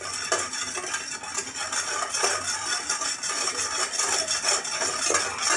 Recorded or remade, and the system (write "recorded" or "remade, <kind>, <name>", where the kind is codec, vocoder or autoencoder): recorded